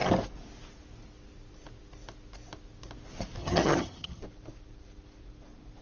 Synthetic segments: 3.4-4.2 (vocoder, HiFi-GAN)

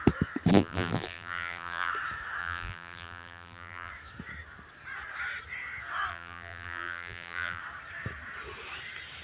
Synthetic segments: 0.5-1.9 (vocoder, BigVGAN v2); 2.4-3.9; 6.1-7.6